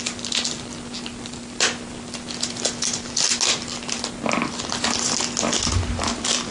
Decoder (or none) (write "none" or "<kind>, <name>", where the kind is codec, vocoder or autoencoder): none